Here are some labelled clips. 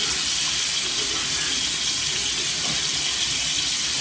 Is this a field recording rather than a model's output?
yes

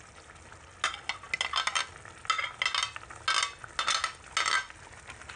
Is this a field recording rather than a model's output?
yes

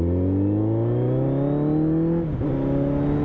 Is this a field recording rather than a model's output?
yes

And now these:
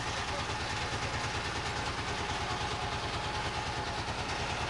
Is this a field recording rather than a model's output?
yes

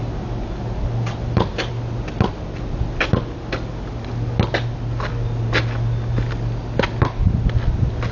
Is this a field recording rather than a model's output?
yes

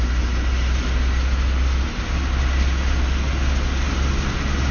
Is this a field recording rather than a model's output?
yes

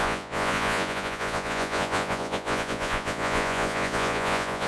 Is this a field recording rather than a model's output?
no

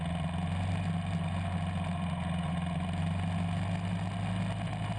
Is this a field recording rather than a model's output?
yes